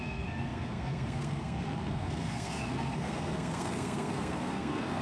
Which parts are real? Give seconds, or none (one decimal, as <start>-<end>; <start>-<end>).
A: none